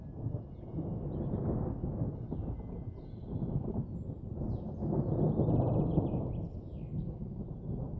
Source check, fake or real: real